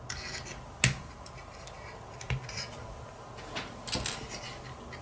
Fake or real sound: real